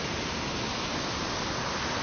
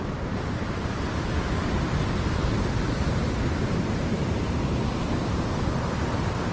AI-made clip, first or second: second